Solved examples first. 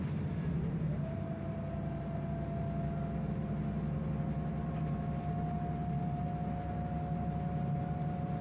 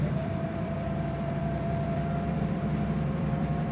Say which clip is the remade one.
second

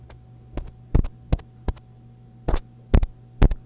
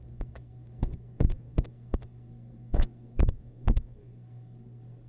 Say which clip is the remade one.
second